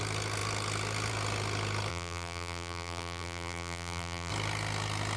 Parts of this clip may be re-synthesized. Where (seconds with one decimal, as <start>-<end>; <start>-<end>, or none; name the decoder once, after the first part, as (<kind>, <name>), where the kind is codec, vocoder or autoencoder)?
1.9-4.3 (vocoder, BigVGAN v2)